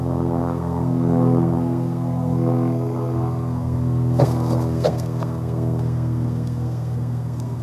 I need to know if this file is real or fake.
fake